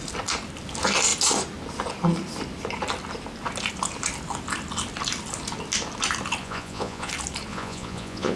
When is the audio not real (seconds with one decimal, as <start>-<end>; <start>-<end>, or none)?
6.4-7.1; 7.5-8.4